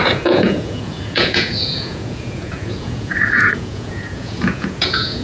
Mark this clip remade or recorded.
remade